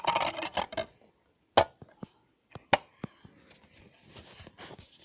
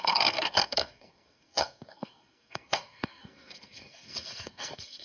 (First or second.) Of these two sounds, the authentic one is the first